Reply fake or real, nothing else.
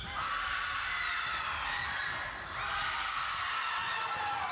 real